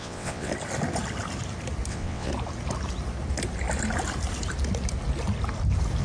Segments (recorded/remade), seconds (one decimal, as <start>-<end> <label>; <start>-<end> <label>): 0.0-0.5 remade; 0.5-1.9 recorded; 1.9-2.3 remade; 2.3-6.0 recorded